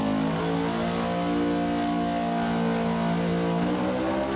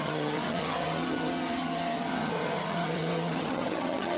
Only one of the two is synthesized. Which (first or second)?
second